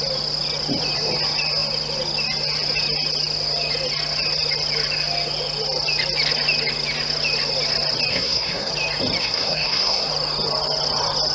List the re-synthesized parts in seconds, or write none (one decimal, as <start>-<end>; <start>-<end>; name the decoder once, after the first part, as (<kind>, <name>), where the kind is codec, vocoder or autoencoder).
8.1-8.7 (codec, SNAC); 9.2-10.1